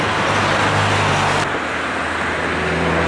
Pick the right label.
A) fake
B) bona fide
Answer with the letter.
B